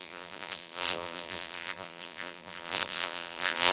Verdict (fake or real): fake